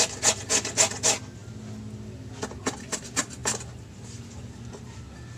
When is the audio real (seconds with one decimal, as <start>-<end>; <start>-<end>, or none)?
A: 0.0-5.4

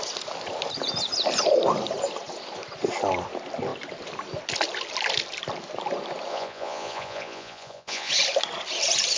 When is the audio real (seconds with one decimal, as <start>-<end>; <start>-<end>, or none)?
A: 0.0-6.3; 8.1-9.2

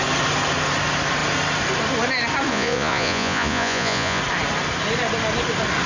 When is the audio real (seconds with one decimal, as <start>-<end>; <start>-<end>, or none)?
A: 0.0-2.5; 4.2-5.9

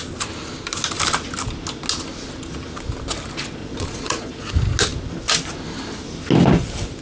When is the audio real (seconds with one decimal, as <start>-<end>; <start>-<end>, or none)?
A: 0.0-3.6; 4.5-7.0

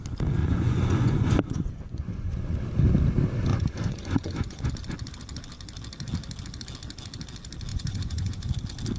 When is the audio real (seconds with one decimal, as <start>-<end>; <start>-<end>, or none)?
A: 0.0-0.4; 2.6-3.5; 4.7-7.7; 8.5-9.0

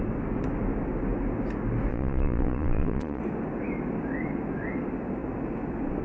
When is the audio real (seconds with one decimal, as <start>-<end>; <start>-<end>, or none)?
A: 0.0-1.9; 3.2-6.0